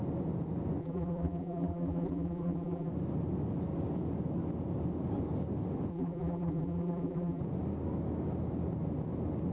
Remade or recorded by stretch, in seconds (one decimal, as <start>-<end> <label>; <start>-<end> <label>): 0.0-0.8 recorded; 0.8-2.9 remade; 2.9-5.9 recorded; 5.9-7.4 remade; 7.4-9.5 recorded